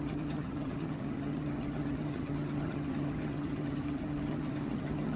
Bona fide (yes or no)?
no